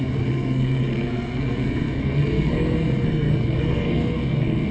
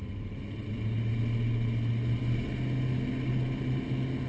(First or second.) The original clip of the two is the second